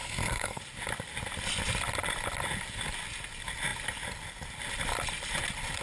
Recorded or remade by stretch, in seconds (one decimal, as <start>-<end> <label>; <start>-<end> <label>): 0.0-0.6 remade; 0.6-5.8 recorded